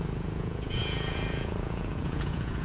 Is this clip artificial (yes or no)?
yes